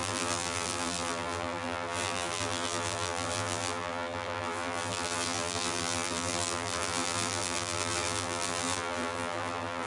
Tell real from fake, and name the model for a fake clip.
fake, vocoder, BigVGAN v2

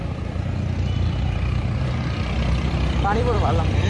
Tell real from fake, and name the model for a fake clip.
fake, vocoder, BigVGAN v2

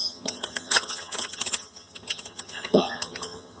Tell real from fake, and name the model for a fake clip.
fake, vocoder, HiFi-GAN